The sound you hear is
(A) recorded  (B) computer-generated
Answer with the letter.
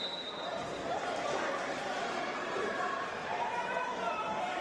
B